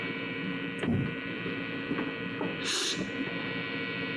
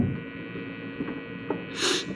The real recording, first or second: second